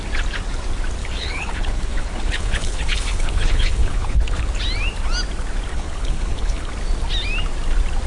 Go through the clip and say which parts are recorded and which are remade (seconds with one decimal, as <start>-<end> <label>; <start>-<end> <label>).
0.0-1.0 recorded; 1.0-4.5 remade; 4.5-5.7 recorded; 5.7-6.7 remade; 6.7-8.1 recorded